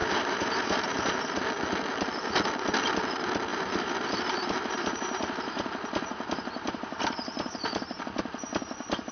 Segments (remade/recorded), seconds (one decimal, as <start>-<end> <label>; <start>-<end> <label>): 0.0-1.4 remade; 1.4-3.5 recorded; 3.5-8.0 remade; 8.0-9.1 recorded